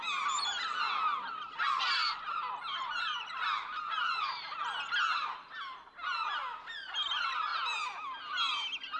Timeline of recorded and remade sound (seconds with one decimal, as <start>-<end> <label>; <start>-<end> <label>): 0.0-9.0 recorded